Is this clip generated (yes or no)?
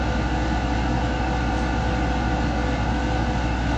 no